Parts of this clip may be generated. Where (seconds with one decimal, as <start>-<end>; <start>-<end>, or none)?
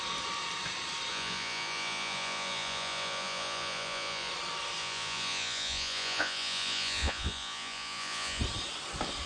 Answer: 1.1-4.3; 4.8-8.4